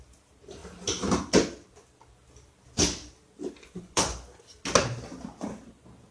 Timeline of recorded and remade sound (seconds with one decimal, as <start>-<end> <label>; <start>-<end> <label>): 0.0-3.6 recorded; 3.6-4.2 remade; 4.2-6.1 recorded